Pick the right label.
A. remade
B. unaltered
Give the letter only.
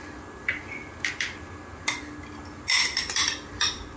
B